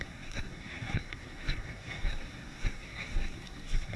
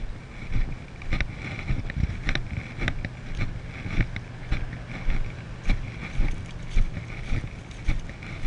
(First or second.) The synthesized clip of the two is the first